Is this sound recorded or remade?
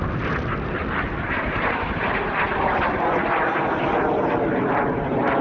recorded